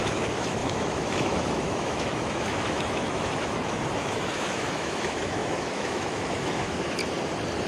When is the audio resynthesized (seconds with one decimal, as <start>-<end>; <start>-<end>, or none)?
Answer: 0.0-7.0